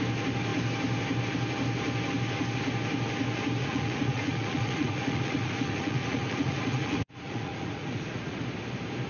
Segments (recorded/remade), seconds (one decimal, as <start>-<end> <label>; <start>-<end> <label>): 0.0-3.6 recorded; 3.6-8.4 remade; 8.4-9.1 recorded